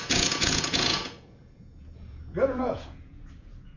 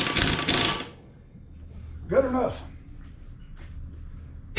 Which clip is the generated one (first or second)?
first